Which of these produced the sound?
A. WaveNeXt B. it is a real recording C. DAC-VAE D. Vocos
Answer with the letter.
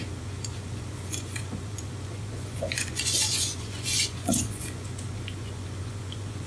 D